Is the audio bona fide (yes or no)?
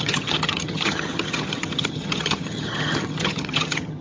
no